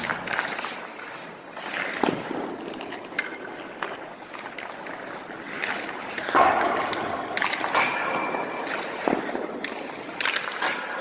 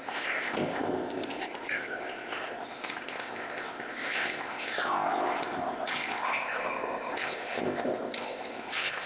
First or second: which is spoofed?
second